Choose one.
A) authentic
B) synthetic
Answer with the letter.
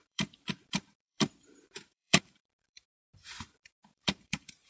B